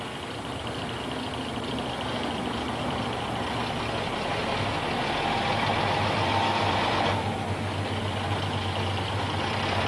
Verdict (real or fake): real